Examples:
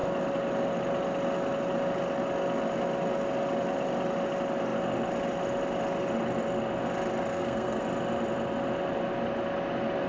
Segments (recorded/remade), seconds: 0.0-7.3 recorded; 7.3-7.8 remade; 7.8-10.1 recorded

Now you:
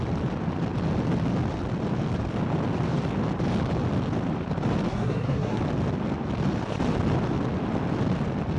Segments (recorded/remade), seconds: 0.0-4.9 recorded; 4.9-5.6 remade; 5.6-8.6 recorded

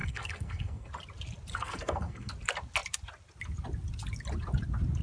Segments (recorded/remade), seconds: 0.0-0.9 remade; 0.9-1.5 recorded; 1.5-2.3 remade; 2.3-5.0 recorded